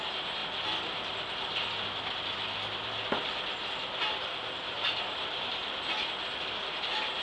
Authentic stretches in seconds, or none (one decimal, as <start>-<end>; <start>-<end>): 0.4-4.0; 5.6-6.6

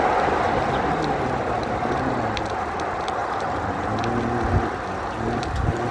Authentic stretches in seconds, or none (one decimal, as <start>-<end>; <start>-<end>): 0.0-3.2; 4.0-5.9

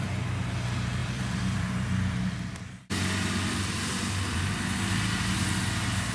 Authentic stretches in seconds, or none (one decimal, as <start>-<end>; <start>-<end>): 0.0-1.0; 4.5-6.1

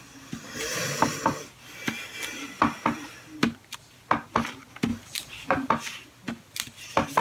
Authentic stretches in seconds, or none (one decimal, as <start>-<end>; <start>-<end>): 0.0-4.9; 5.7-7.2

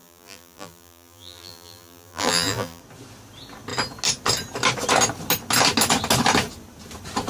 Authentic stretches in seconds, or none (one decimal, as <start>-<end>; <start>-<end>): 2.8-7.3